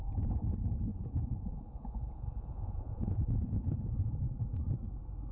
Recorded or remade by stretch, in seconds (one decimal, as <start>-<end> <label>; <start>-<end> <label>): 0.0-0.9 recorded; 0.9-4.1 remade; 4.1-5.3 recorded